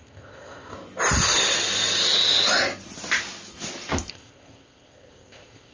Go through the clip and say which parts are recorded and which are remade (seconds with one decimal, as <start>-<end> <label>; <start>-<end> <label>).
0.0-0.7 remade; 0.7-4.1 recorded; 4.1-5.7 remade